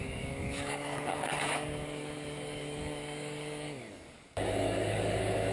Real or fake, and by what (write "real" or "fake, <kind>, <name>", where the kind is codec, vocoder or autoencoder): fake, codec, DAC